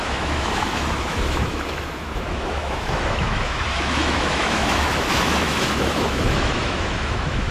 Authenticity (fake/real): fake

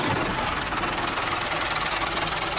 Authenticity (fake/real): real